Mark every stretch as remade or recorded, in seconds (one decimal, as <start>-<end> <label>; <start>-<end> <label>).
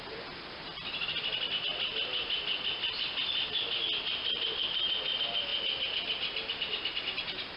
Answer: 0.0-7.6 recorded